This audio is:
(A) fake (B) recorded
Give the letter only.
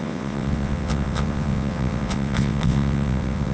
A